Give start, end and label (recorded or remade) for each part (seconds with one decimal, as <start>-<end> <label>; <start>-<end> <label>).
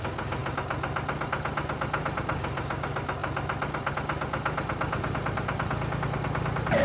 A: 0.0-6.8 recorded